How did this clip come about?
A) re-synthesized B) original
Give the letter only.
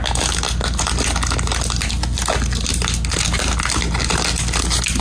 B